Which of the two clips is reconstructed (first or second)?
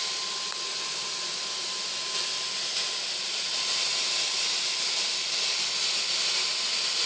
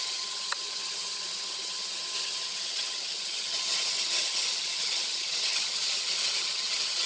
second